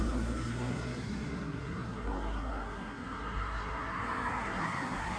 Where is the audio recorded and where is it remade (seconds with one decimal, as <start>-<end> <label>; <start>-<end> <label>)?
0.0-5.2 remade